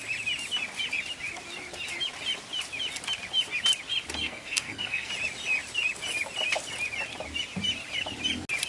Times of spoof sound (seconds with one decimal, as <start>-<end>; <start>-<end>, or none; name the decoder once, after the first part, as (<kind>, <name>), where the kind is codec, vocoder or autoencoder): 4.2-5.1 (codec, SNAC)